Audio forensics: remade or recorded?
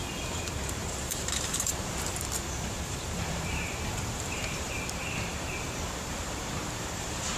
remade